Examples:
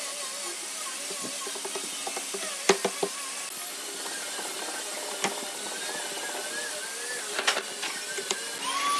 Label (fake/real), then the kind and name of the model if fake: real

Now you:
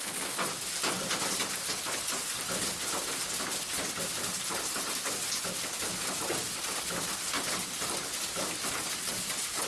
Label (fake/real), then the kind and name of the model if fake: real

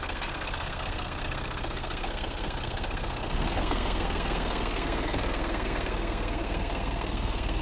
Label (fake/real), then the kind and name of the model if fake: fake, codec, SNAC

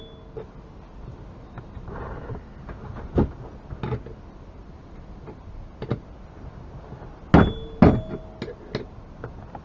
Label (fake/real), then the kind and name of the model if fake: real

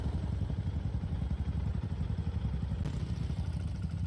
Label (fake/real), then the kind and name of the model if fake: real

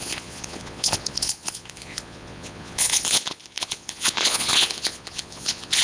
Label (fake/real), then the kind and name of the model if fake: fake, vocoder, Vocos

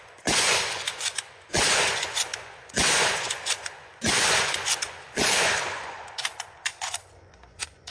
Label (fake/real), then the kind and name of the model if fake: fake, vocoder, Vocos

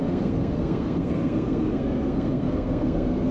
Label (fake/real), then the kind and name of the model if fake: fake, codec, SNAC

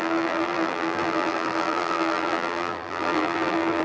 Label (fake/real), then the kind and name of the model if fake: fake, vocoder, BigVGAN v2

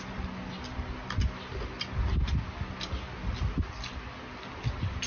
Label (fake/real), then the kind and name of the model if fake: real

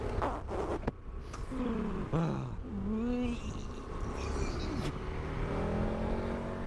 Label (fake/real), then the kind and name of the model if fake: real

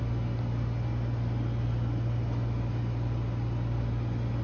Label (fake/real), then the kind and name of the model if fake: real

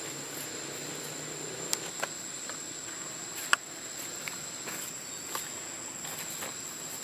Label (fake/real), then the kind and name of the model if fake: real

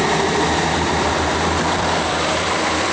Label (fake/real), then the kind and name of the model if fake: fake, vocoder, BigVGAN v2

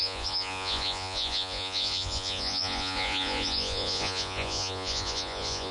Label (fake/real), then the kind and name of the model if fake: fake, vocoder, Vocos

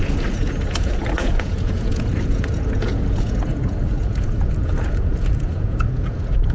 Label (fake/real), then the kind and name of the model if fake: fake, vocoder, Vocos